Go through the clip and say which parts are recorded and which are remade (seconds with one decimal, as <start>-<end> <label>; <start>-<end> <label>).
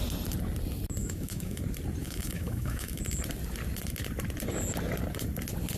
0.0-1.0 recorded; 1.0-1.6 remade; 1.6-2.0 recorded; 2.0-3.0 remade; 3.0-5.8 recorded